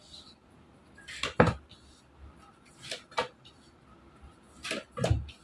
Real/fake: real